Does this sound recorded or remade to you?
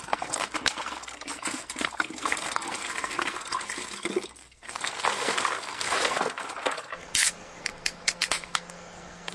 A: remade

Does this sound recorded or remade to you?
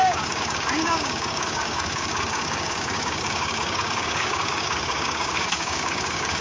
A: remade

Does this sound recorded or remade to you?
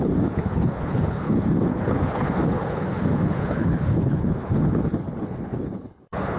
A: remade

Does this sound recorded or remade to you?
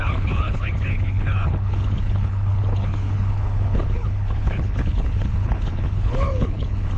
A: remade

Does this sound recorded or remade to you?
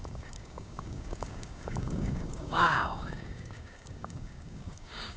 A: remade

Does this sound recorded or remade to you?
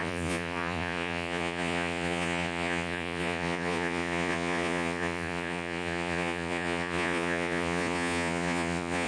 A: remade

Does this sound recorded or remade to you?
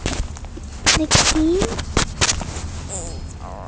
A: recorded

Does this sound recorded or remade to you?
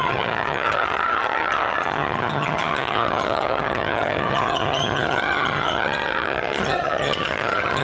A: remade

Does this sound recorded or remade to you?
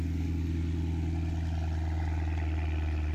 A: recorded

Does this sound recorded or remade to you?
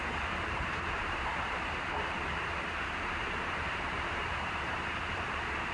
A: remade